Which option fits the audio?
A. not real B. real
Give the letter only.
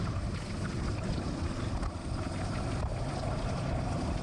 B